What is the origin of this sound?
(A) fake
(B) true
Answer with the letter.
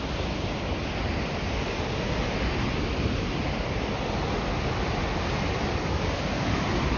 B